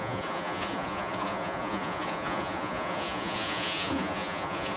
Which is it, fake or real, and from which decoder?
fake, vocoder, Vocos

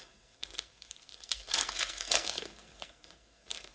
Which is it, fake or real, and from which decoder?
fake, codec, SNAC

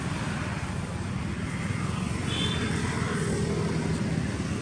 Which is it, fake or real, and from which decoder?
real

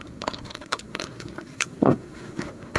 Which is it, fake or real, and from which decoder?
fake, codec, SNAC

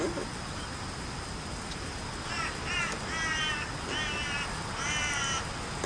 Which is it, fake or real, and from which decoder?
real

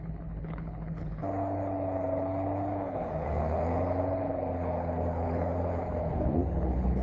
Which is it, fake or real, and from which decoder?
fake, codec, HILCodec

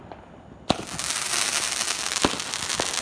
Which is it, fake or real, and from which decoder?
real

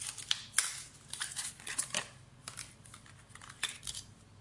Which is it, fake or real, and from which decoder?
real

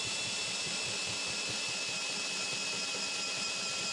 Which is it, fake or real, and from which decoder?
real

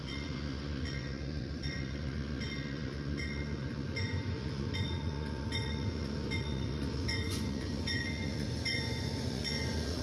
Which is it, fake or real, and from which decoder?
fake, vocoder, Vocos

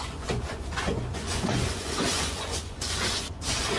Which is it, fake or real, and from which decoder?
fake, vocoder, Vocos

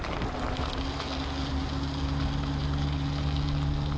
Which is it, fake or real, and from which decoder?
real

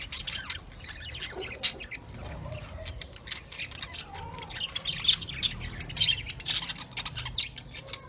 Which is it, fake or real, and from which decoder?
real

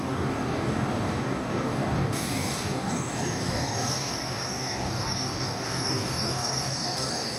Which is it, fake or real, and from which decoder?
fake, codec, DAC